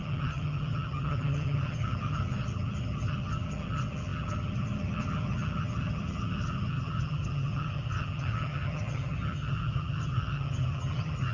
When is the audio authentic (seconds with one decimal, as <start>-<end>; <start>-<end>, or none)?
none